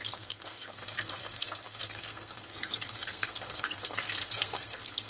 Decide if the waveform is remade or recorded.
remade